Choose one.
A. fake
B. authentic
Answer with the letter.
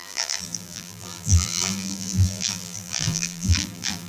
A